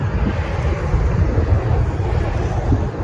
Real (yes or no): yes